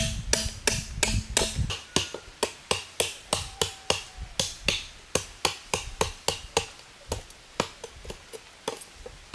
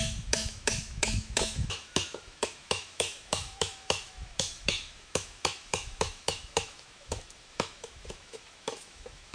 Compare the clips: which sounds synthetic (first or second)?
second